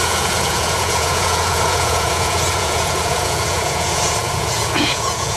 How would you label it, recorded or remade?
remade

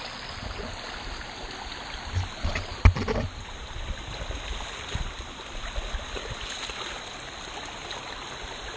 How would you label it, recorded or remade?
recorded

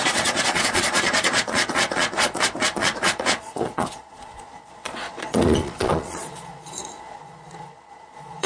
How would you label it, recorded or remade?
remade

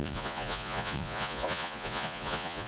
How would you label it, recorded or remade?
remade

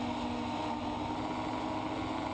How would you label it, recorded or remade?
recorded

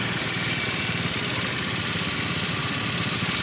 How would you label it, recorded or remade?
recorded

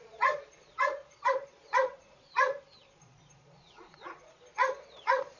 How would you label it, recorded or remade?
remade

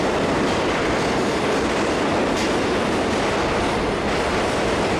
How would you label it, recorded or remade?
recorded